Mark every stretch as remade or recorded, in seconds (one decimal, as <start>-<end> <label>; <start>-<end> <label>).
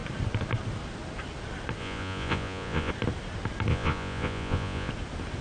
0.0-1.8 recorded; 1.8-2.9 remade; 2.9-3.7 recorded; 3.7-4.9 remade; 4.9-5.4 recorded